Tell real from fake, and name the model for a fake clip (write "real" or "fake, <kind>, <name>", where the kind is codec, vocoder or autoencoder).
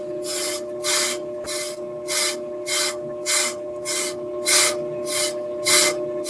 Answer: real